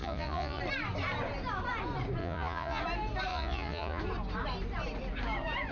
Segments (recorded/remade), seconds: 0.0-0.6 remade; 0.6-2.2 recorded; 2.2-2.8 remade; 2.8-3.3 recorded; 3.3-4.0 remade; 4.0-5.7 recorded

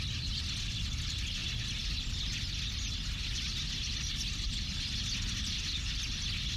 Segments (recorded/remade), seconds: 0.0-6.6 recorded